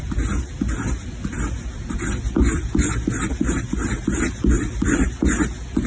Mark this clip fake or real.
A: real